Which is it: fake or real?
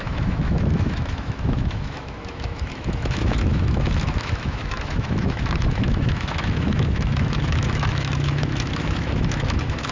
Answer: fake